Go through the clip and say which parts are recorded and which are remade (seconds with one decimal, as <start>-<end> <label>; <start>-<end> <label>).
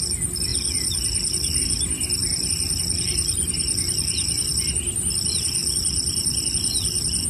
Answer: 0.0-2.2 recorded; 2.2-3.5 remade; 3.5-7.3 recorded